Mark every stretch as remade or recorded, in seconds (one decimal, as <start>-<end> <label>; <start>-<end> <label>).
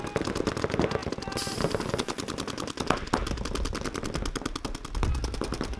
0.0-5.8 recorded